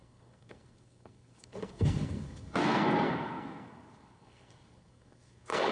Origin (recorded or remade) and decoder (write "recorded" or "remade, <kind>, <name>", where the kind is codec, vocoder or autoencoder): remade, codec, SNAC